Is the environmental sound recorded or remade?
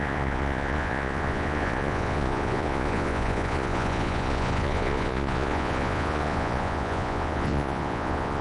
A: remade